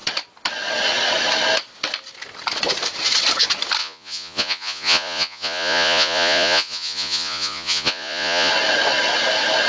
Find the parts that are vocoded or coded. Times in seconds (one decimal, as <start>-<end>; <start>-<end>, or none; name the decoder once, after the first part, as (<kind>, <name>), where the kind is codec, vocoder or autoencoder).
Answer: 3.8-8.5 (vocoder, Vocos)